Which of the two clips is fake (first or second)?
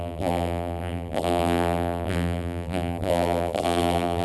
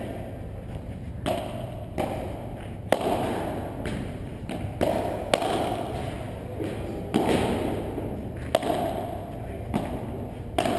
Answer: first